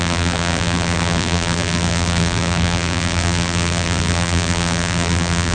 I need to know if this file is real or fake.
fake